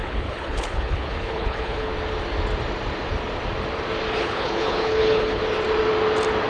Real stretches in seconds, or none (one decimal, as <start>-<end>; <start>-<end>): 1.9-4.1; 5.4-6.5